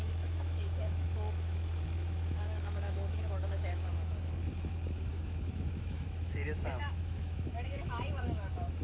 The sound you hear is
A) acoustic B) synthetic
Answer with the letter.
B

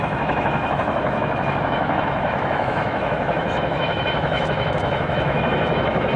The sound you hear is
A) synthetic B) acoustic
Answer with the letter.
A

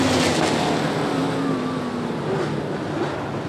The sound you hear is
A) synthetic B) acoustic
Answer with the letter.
B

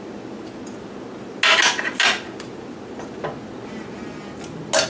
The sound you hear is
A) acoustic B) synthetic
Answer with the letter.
A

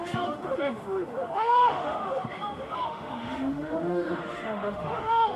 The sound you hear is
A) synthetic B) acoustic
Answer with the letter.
A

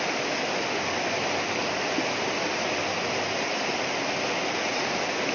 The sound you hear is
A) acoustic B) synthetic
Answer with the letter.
A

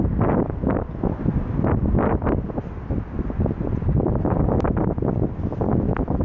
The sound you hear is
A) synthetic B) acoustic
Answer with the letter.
B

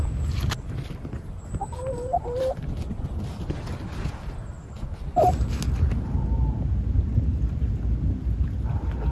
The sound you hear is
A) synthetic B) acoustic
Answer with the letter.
B